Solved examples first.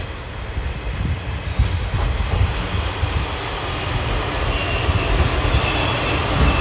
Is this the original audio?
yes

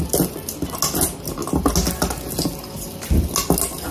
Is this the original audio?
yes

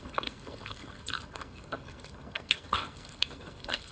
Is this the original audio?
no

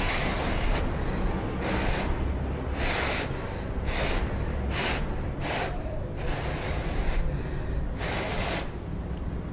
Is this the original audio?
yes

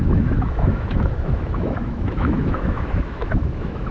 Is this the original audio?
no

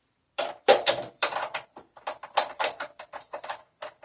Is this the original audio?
no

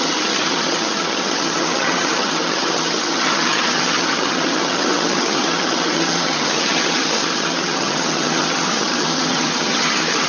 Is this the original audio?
no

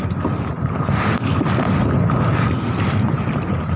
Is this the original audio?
yes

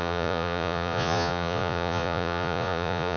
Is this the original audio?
no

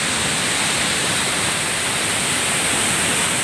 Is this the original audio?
yes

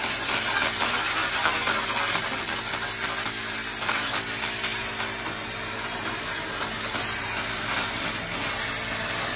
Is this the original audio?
yes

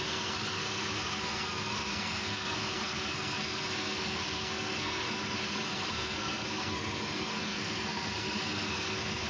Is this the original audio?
no